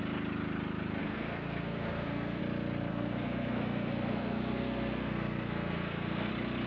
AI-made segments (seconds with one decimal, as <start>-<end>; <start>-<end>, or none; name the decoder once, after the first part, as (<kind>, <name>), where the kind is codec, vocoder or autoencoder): 1.0-2.4 (codec, SNAC); 2.9-6.3